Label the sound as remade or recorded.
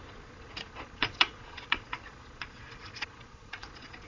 remade